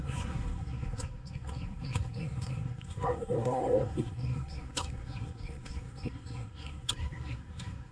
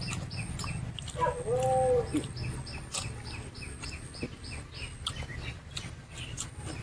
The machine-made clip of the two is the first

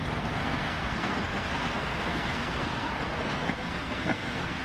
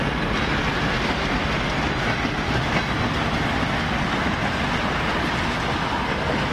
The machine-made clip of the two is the first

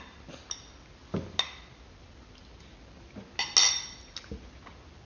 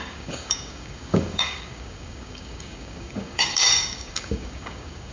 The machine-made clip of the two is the second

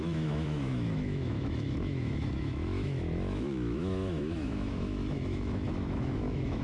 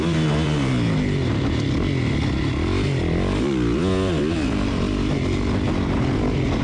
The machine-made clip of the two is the first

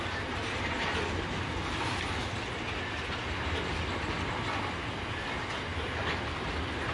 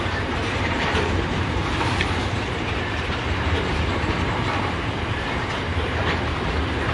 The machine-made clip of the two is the second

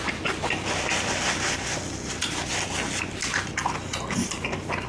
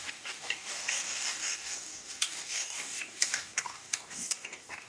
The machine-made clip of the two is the second